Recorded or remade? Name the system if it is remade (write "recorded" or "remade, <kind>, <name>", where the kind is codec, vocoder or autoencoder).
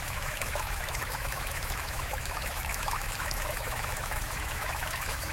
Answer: remade, autoencoder, DAC-VAE